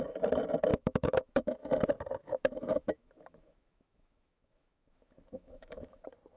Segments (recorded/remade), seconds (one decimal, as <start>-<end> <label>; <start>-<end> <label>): 0.0-0.7 recorded; 0.7-1.7 remade; 1.7-2.2 recorded; 2.2-6.0 remade; 6.0-6.4 recorded